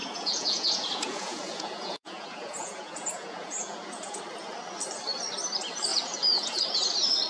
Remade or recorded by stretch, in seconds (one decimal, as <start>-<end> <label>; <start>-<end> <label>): 0.0-4.2 remade; 4.2-5.9 recorded; 5.9-6.7 remade; 6.7-7.3 recorded

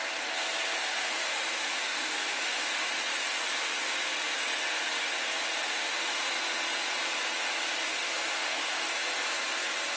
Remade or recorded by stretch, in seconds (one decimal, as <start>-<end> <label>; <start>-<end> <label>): 0.0-0.8 recorded; 0.8-2.9 remade; 2.9-5.6 recorded; 5.6-6.3 remade; 6.3-7.8 recorded; 7.8-8.9 remade; 8.9-10.0 recorded

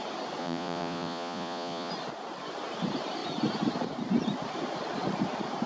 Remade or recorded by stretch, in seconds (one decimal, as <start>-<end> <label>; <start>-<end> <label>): 0.0-0.4 recorded; 0.4-1.9 remade; 1.9-5.7 recorded

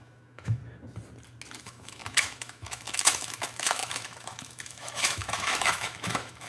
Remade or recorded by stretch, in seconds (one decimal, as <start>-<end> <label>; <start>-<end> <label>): 0.0-0.6 remade; 0.6-1.6 recorded; 1.6-6.5 remade

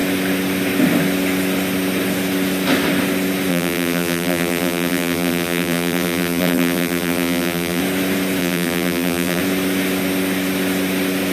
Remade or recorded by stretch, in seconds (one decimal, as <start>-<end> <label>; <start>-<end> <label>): 0.0-3.5 recorded; 3.5-7.8 remade; 7.8-8.4 recorded; 8.4-9.4 remade; 9.4-11.3 recorded